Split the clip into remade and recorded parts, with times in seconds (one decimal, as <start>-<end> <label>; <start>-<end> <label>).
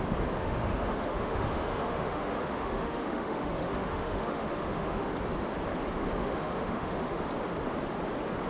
0.0-0.4 recorded; 0.4-5.1 remade; 5.1-6.2 recorded; 6.2-7.2 remade; 7.2-8.5 recorded